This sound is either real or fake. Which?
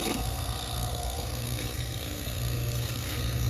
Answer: fake